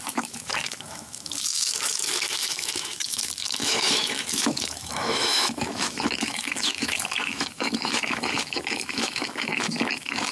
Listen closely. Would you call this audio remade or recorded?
remade